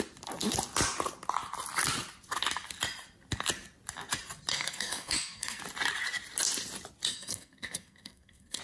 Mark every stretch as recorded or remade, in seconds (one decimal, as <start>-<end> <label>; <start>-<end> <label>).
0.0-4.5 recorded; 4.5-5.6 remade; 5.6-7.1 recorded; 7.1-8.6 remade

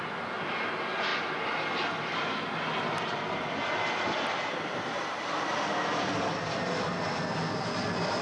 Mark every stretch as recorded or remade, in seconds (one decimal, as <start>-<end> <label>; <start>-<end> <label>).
0.0-8.2 recorded

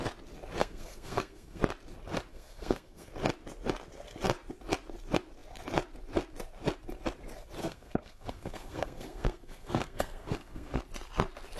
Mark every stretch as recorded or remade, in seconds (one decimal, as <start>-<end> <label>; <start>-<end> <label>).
0.0-0.6 recorded; 0.6-1.6 remade; 1.6-2.3 recorded; 2.3-3.1 remade; 3.1-7.6 recorded; 7.6-10.8 remade; 10.8-11.6 recorded